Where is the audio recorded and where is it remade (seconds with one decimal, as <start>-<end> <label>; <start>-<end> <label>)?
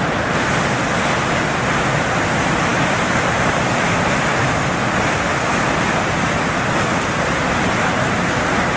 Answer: 0.0-8.8 recorded